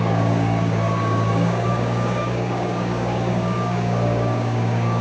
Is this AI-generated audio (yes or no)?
yes